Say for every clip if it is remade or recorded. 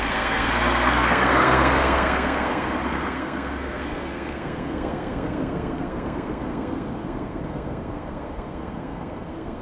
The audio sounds remade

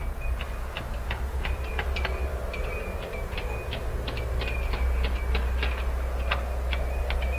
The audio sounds recorded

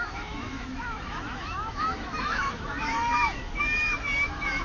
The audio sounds remade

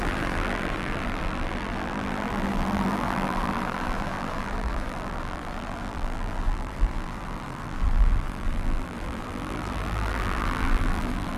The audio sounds remade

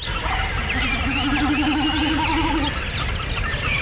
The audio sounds recorded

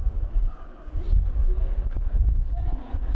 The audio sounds remade